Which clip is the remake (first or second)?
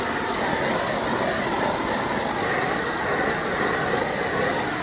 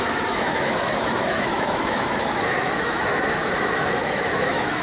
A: second